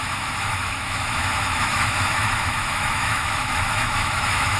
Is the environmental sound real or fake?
fake